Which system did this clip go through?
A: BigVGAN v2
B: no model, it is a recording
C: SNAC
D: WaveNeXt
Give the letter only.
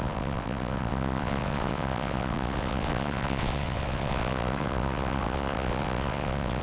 D